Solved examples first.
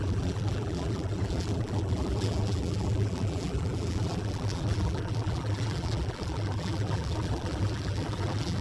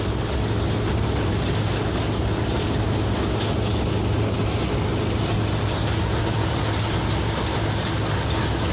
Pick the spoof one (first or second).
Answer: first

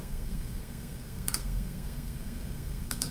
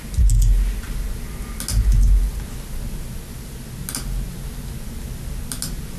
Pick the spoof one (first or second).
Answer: first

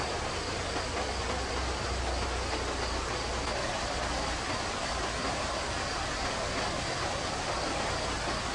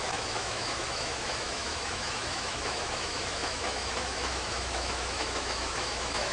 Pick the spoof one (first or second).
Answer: second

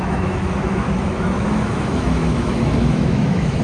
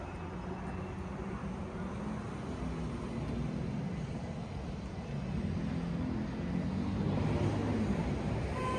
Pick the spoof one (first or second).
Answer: first